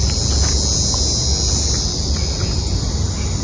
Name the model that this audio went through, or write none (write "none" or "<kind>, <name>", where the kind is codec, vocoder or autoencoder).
none